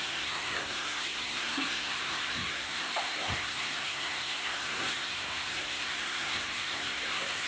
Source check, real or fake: fake